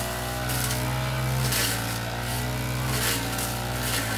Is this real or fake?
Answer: real